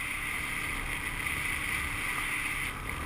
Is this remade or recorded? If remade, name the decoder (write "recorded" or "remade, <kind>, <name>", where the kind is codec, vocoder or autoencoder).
recorded